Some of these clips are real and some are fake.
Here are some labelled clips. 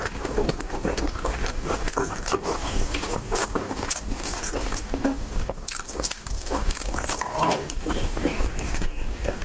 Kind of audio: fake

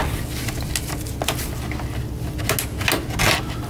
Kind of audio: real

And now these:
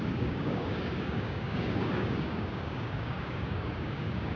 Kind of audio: fake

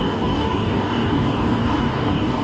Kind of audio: fake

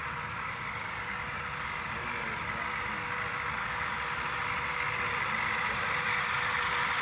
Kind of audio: real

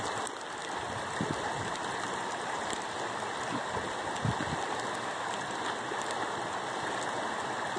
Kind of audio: real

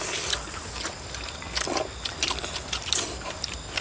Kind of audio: real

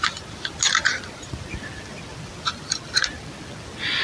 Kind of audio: real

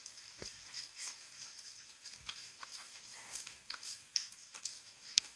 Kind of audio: fake